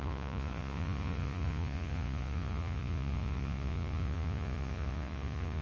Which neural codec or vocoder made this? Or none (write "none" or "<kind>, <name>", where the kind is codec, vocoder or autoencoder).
vocoder, Vocos